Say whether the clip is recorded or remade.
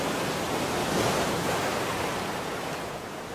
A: recorded